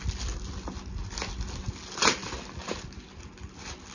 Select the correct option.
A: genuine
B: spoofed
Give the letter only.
A